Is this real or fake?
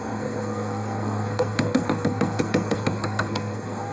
fake